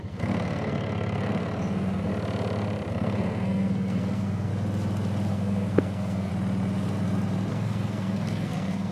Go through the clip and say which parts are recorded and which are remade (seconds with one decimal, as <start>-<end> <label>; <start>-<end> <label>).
0.0-2.1 remade; 2.1-2.9 recorded; 2.9-4.5 remade; 4.5-5.3 recorded; 5.3-6.3 remade; 6.3-7.5 recorded; 7.5-8.9 remade